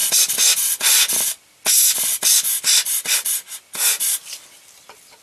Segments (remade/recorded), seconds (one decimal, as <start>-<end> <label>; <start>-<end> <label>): 0.0-5.2 recorded